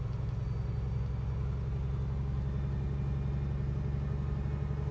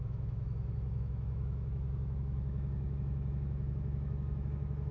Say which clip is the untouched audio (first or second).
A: first